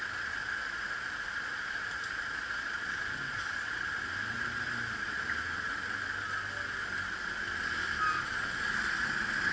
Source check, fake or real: real